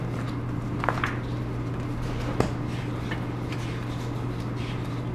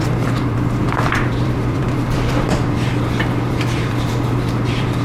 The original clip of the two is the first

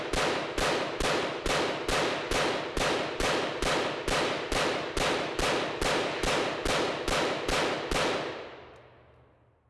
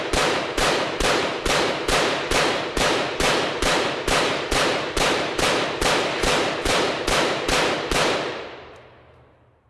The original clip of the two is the first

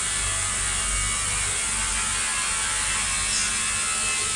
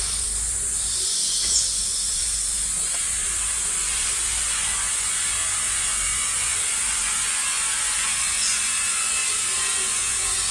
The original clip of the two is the first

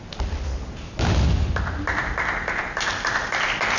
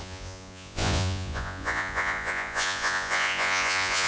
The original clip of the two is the first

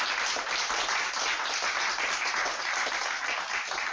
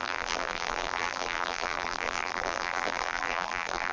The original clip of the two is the first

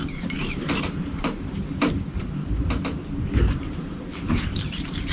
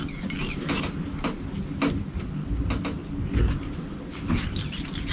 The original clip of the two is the second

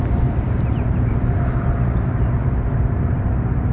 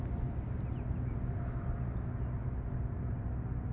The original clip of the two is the second